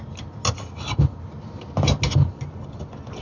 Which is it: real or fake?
real